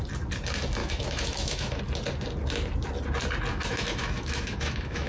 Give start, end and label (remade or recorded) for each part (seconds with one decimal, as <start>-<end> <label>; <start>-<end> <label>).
0.0-0.8 recorded; 0.8-1.8 remade; 1.8-3.5 recorded; 3.5-5.1 remade